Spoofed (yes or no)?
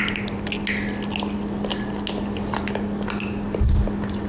no